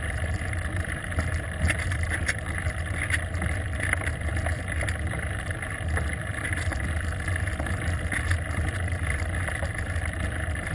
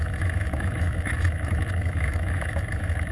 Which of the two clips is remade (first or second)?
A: second